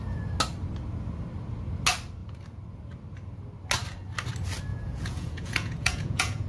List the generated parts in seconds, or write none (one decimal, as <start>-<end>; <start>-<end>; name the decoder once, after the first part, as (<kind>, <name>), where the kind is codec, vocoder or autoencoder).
4.7-6.5 (vocoder, Vocos)